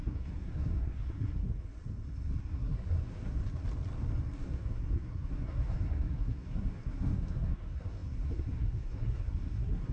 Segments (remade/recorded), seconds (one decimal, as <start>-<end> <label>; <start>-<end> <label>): 0.0-1.5 remade; 1.5-2.4 recorded; 2.4-3.4 remade; 3.4-4.4 recorded; 4.4-9.9 remade